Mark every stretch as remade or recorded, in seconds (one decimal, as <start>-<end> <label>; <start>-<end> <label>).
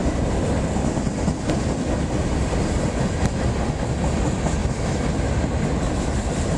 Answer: 0.0-4.6 recorded; 4.6-5.2 remade; 5.2-6.6 recorded